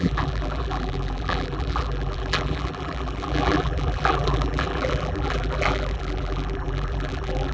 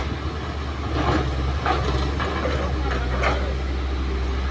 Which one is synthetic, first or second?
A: first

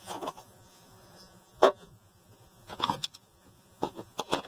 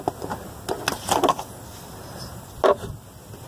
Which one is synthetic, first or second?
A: first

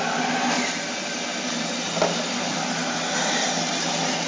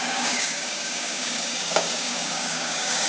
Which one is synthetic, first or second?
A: second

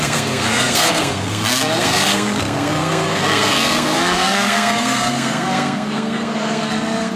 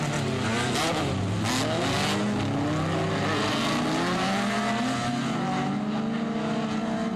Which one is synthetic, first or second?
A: first